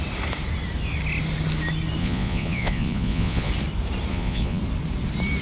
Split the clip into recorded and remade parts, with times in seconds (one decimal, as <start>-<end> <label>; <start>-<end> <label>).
0.0-2.0 recorded; 2.0-3.5 remade; 3.5-4.1 recorded; 4.1-4.6 remade; 4.6-5.4 recorded